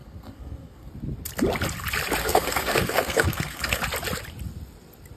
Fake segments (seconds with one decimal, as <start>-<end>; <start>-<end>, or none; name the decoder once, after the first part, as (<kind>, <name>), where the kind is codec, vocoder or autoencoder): 0.0-0.9 (codec, SNAC); 2.2-3.8